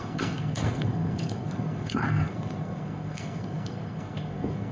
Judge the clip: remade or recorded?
remade